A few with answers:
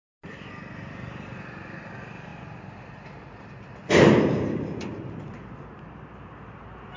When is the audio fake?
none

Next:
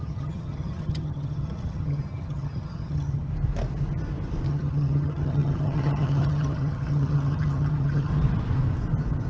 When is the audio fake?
0.0-3.3 (vocoder, HiFi-GAN); 4.5-8.1

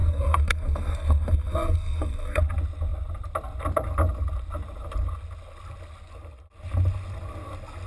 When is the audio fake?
0.0-2.4 (codec, SNAC)

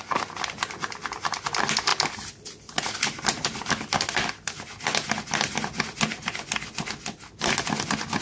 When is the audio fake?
none

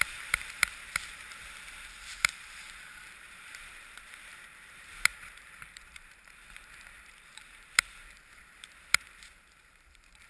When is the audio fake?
0.0-1.4 (vocoder, BigVGAN v2); 2.1-10.3